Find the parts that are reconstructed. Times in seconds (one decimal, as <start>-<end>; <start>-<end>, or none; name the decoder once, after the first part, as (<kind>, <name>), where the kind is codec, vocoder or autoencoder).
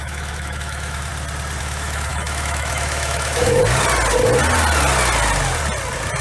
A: 0.0-1.1 (autoencoder, DAC-VAE); 1.6-3.6